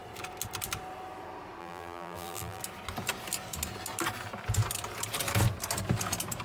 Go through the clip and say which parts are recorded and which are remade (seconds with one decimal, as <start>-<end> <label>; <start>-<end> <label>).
0.0-1.6 recorded; 1.6-2.6 remade; 2.6-6.4 recorded